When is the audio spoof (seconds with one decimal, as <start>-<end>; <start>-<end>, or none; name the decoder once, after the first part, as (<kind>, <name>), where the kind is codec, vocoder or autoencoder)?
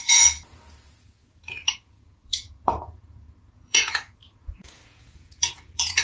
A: 0.0-6.0 (vocoder, Vocos)